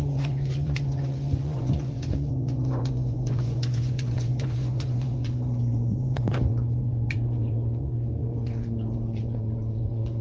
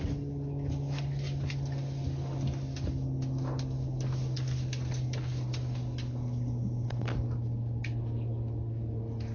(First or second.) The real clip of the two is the second